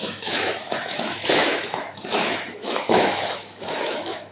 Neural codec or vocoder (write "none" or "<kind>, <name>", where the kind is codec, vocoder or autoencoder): autoencoder, DAC-VAE